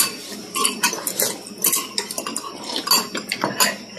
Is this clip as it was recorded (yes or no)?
yes